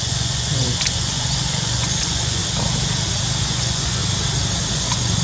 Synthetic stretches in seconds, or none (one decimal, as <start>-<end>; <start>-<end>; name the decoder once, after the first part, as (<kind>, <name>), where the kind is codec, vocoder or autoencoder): 0.0-2.4 (vocoder, Vocos); 3.4-4.0; 4.7-5.2